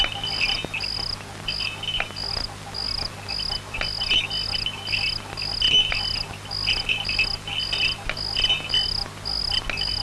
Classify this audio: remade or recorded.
recorded